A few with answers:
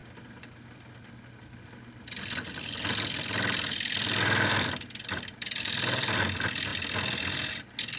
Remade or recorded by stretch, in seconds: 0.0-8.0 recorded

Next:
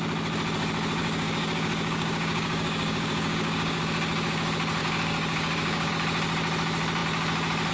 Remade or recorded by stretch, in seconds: 0.0-1.0 recorded; 1.0-3.8 remade; 3.8-4.8 recorded; 4.8-5.9 remade; 5.9-7.7 recorded

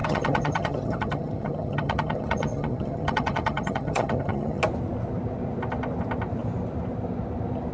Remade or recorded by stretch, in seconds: 0.0-4.6 remade; 4.6-7.7 recorded